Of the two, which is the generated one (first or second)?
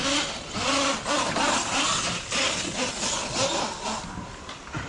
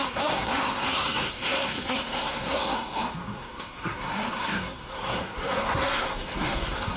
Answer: second